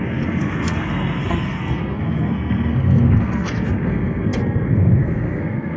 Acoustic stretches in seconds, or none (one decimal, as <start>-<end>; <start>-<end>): none